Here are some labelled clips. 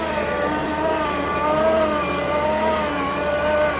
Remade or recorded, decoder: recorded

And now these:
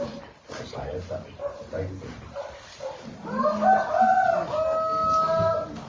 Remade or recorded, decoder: recorded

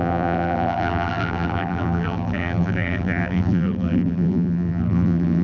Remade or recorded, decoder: remade, vocoder, BigVGAN v2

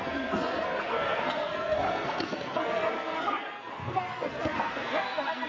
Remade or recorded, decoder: remade, codec, SNAC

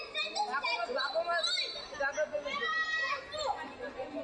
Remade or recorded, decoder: recorded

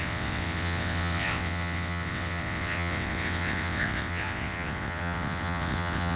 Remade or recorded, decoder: remade, vocoder, WaveNeXt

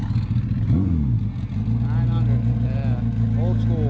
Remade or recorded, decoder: recorded